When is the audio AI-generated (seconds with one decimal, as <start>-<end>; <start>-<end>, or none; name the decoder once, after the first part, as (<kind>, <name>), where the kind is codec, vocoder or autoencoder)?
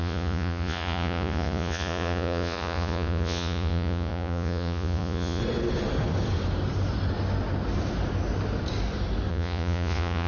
0.0-5.4 (vocoder, Vocos); 9.3-10.3